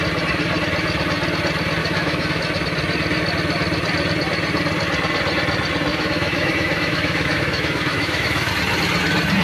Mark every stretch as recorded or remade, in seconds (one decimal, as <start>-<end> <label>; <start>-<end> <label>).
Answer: 0.0-1.8 recorded; 1.8-2.4 remade; 2.4-5.9 recorded; 5.9-8.5 remade; 8.5-9.4 recorded